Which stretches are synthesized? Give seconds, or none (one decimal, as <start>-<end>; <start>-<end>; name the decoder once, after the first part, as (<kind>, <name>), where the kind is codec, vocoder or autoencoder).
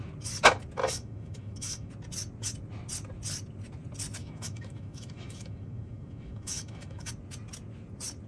0.8-1.9 (autoencoder, DAC-VAE); 4.2-7.1